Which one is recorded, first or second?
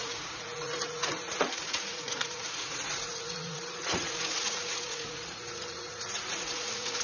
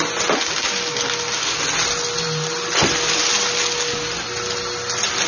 second